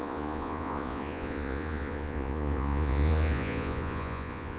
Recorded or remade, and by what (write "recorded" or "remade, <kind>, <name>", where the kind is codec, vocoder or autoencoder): remade, vocoder, Vocos